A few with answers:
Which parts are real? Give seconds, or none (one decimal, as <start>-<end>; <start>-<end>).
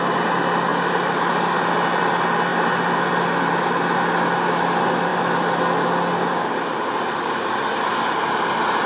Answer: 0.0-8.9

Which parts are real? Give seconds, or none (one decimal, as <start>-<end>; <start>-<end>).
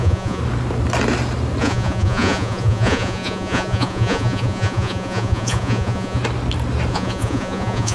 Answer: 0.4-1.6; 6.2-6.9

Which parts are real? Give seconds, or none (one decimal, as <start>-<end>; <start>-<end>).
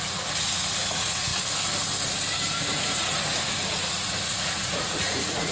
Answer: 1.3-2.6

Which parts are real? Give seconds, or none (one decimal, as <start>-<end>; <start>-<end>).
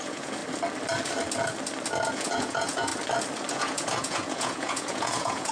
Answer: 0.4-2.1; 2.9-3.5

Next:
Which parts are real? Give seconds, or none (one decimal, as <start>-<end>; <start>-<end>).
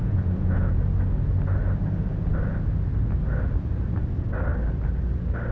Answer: 0.8-5.5